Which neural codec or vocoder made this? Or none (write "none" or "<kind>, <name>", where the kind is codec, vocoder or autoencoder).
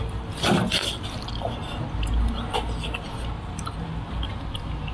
none